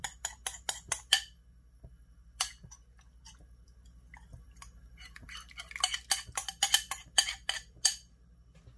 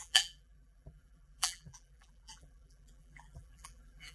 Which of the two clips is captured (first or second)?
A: first